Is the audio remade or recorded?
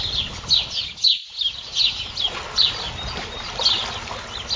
recorded